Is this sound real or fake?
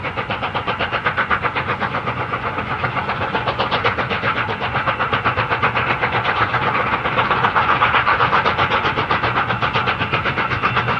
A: fake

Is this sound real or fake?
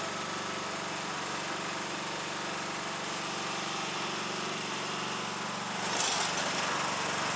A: real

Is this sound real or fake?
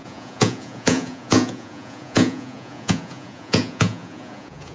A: fake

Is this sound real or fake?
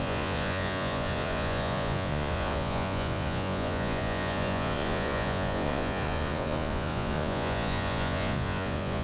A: fake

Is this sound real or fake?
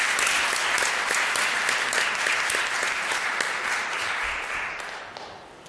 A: real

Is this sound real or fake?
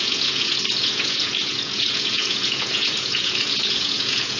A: fake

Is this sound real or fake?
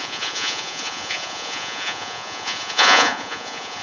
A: fake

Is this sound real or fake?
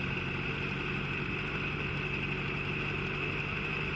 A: real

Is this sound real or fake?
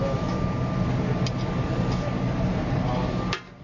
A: real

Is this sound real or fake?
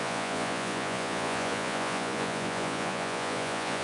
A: fake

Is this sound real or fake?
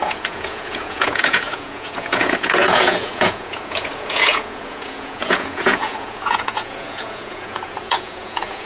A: fake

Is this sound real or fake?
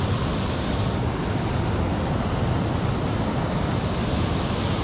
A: real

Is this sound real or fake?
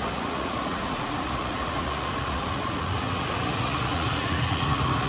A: fake